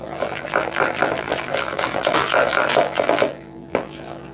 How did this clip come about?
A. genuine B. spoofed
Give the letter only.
B